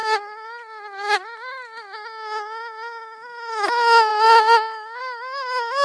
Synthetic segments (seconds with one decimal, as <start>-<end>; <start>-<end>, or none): 3.5-4.1; 5.0-5.8

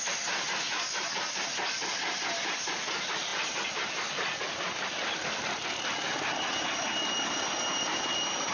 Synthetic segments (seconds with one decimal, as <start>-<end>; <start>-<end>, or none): none